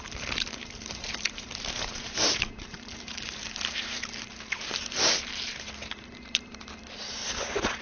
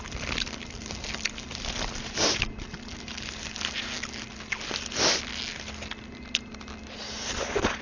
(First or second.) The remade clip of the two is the first